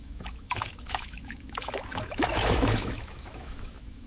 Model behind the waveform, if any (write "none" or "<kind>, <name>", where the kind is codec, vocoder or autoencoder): autoencoder, DAC-VAE